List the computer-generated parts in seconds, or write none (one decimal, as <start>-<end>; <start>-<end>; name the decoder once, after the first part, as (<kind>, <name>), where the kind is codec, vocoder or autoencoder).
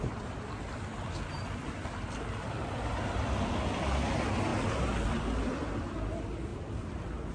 none